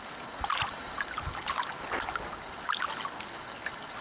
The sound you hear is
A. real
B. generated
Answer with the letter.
A